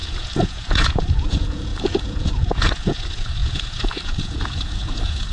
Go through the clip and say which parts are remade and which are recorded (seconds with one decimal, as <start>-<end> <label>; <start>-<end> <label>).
0.0-5.3 remade